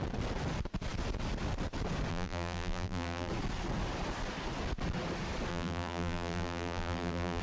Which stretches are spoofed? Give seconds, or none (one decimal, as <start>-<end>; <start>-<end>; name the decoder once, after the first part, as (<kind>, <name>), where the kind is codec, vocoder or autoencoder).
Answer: 2.1-3.3 (vocoder, BigVGAN v2); 5.5-7.4